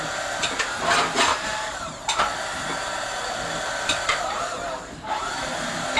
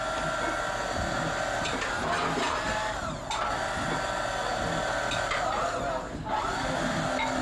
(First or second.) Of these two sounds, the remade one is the first